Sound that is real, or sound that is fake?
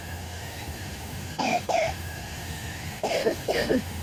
fake